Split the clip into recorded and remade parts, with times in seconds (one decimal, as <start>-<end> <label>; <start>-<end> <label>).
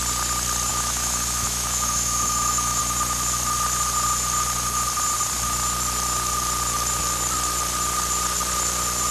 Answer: 0.0-0.7 recorded; 0.7-2.8 remade; 2.8-9.1 recorded